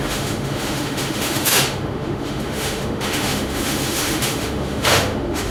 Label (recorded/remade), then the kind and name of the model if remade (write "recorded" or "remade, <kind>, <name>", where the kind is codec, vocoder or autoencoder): remade, autoencoder, DAC-VAE